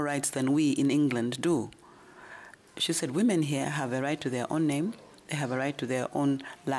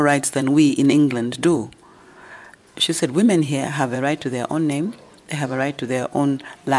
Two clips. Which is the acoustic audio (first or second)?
first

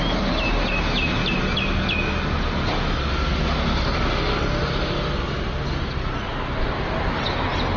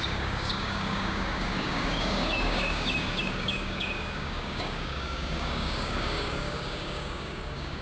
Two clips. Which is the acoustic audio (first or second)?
first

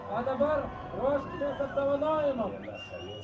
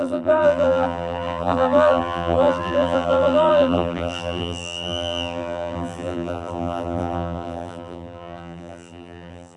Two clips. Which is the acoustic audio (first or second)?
first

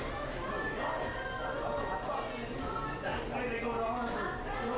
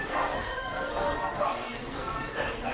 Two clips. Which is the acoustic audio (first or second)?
first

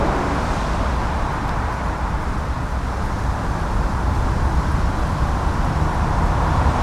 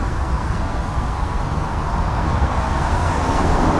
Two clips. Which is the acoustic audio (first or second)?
first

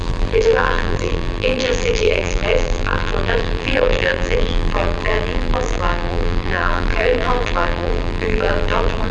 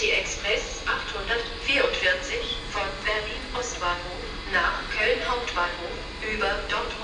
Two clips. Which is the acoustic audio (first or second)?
second